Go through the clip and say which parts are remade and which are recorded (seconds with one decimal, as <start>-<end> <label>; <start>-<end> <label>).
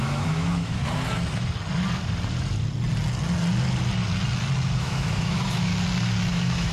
0.0-0.8 remade; 0.8-4.8 recorded; 4.8-5.7 remade; 5.7-6.3 recorded; 6.3-6.7 remade